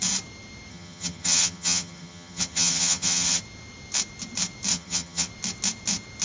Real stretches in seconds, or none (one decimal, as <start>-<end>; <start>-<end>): 0.0-0.7; 3.4-4.7; 5.3-6.2